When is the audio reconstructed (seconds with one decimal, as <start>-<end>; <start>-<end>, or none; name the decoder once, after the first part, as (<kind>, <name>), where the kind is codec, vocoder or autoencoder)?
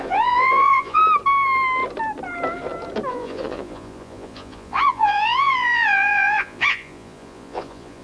0.0-1.0 (vocoder, Vocos); 3.1-8.0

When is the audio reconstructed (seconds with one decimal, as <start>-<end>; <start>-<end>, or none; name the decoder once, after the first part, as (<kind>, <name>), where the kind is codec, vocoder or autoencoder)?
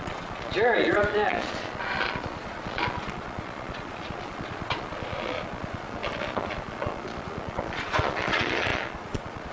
0.0-9.5 (vocoder, Vocos)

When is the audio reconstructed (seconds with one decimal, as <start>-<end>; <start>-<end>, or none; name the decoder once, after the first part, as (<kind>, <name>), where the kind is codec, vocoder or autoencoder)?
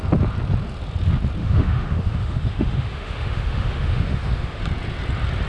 1.4-4.6 (autoencoder, DAC-VAE)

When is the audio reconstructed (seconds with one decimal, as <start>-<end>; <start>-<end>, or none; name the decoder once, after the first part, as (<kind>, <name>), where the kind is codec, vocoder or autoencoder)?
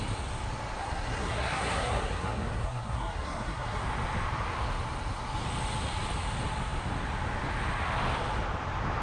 0.8-3.8 (codec, SNAC)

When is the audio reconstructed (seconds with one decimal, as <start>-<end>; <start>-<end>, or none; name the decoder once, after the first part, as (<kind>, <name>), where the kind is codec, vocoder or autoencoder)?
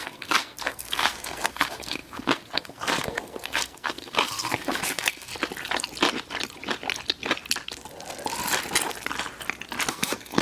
0.0-5.3 (codec, SNAC); 9.9-10.4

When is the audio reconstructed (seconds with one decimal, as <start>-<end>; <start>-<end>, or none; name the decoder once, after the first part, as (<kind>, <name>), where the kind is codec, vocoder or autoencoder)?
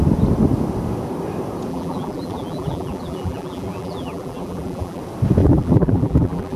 1.7-5.0 (vocoder, BigVGAN v2); 5.4-6.6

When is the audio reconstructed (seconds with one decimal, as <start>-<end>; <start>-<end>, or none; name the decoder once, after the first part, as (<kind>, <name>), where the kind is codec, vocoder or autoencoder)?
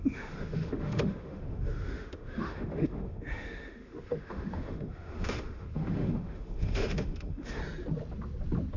0.0-7.6 (autoencoder, DAC-VAE)